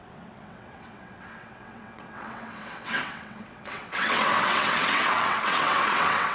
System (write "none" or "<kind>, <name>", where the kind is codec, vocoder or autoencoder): vocoder, WaveNeXt